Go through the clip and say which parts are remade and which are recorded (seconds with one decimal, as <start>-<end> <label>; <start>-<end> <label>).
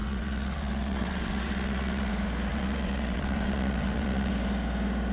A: 0.0-2.1 remade; 2.1-2.5 recorded; 2.5-4.3 remade; 4.3-5.1 recorded